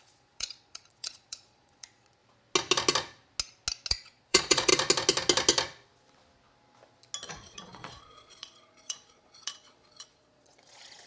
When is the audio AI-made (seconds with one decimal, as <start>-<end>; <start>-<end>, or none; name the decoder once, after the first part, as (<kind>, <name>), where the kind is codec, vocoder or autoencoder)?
0.0-2.2 (vocoder, Vocos); 3.9-4.7; 7.3-11.1